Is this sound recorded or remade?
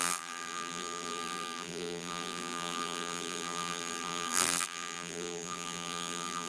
remade